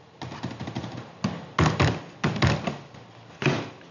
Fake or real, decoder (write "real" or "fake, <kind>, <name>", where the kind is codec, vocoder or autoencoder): real